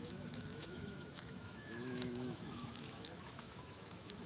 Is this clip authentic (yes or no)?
no